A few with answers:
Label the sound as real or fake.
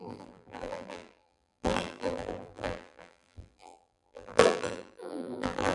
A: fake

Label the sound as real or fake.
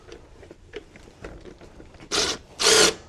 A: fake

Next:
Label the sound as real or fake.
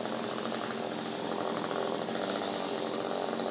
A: real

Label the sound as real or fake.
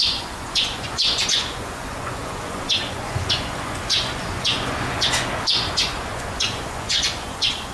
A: fake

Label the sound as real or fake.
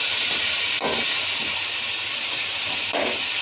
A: real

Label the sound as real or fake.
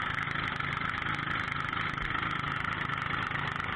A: real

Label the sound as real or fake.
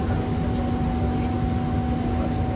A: real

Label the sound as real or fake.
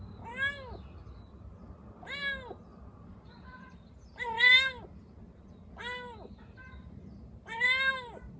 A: real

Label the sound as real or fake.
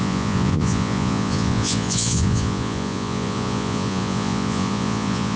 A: fake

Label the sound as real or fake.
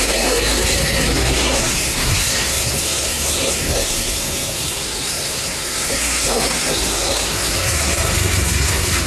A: fake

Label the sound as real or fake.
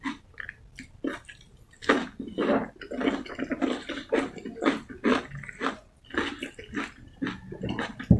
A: real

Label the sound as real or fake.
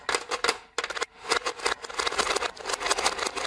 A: real